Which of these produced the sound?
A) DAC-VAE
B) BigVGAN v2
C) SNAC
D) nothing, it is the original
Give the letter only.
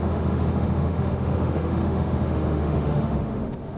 A